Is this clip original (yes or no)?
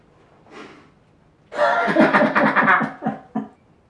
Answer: yes